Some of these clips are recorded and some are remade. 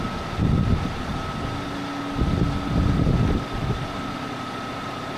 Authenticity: recorded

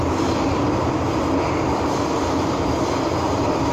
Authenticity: recorded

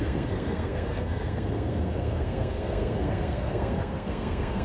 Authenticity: remade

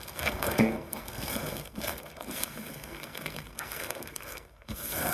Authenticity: remade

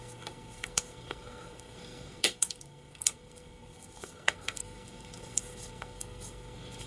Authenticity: remade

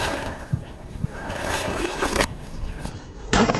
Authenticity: remade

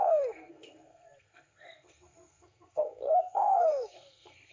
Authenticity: remade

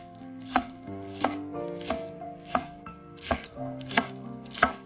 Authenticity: remade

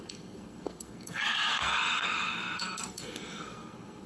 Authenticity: remade